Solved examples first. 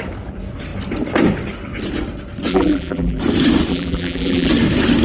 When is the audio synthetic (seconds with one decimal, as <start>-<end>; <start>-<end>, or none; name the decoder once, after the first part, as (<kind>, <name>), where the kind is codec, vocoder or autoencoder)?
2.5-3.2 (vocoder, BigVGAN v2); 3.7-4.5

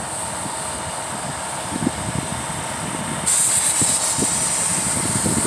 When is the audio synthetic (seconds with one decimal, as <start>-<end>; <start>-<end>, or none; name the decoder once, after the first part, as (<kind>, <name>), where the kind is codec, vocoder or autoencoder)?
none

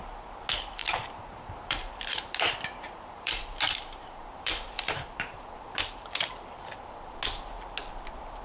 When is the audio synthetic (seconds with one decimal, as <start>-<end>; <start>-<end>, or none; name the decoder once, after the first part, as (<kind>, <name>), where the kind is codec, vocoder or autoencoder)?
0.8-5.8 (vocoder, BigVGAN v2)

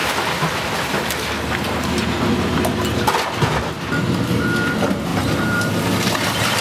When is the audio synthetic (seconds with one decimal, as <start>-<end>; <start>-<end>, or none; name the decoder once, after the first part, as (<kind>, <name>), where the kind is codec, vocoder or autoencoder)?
0.0-0.6 (vocoder, BigVGAN v2); 5.1-5.6

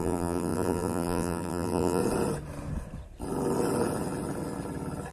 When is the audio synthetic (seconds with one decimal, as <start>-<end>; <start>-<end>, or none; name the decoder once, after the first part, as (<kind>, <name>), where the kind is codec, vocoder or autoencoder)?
0.0-2.0 (vocoder, BigVGAN v2)

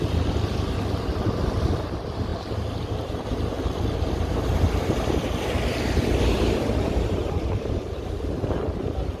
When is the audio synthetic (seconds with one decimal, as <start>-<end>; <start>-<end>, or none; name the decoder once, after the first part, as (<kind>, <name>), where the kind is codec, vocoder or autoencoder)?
none